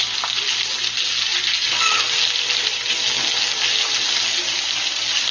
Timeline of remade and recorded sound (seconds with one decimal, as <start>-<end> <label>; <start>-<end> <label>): 0.0-5.3 recorded